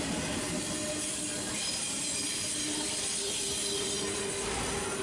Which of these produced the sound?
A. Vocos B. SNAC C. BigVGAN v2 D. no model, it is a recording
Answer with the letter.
D